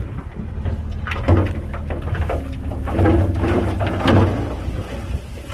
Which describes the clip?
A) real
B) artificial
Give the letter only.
A